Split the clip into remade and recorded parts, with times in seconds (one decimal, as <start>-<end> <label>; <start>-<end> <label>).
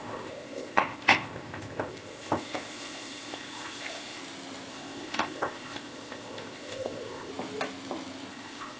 0.0-4.2 remade; 4.2-4.7 recorded; 4.7-7.3 remade; 7.3-8.3 recorded; 8.3-8.8 remade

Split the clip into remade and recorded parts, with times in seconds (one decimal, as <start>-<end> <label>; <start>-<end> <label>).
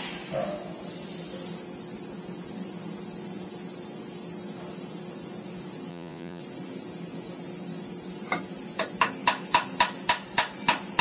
0.0-5.9 recorded; 5.9-6.4 remade; 6.4-11.0 recorded